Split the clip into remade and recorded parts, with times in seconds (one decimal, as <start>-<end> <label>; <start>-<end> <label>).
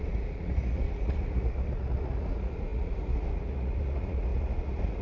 0.0-5.0 remade